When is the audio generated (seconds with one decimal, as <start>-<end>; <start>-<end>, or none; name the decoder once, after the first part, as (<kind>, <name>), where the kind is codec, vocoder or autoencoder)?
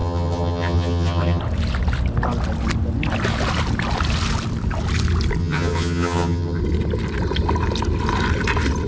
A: 0.0-1.4 (vocoder, HiFi-GAN); 5.4-6.6